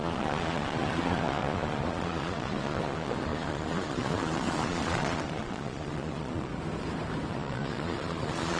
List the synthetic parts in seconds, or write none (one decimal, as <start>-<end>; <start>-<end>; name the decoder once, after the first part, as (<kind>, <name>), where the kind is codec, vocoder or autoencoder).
0.0-6.5 (vocoder, Vocos); 7.3-8.6